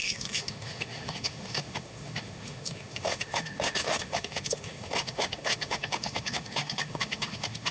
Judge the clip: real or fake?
fake